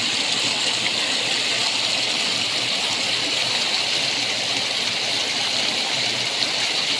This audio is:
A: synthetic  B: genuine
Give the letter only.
B